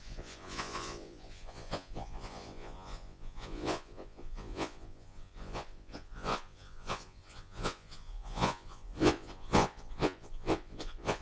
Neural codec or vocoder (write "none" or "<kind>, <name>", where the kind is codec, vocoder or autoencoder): vocoder, Vocos